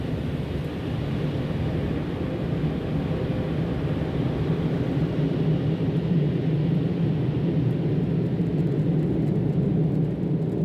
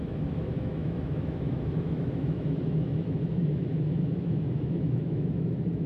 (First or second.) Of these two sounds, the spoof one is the second